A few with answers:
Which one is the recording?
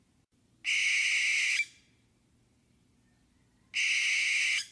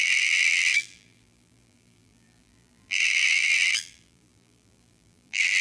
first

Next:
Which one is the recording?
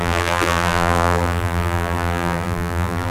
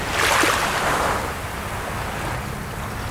second